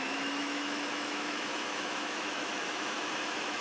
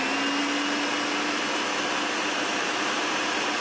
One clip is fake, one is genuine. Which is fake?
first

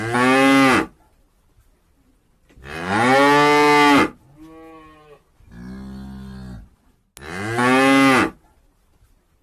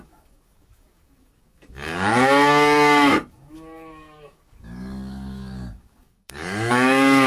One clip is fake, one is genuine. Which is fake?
second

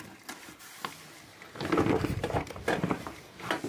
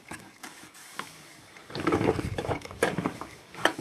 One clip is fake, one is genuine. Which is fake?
second